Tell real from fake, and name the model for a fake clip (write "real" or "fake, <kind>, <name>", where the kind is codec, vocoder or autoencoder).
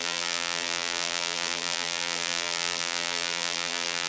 fake, vocoder, BigVGAN v2